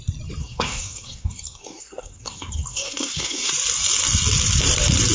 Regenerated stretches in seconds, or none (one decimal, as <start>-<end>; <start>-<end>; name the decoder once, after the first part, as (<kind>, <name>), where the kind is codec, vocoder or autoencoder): 0.4-3.5 (codec, SNAC)